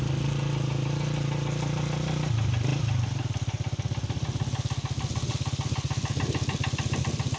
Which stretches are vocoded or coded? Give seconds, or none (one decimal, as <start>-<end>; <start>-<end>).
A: none